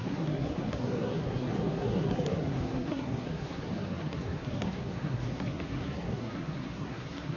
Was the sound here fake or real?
fake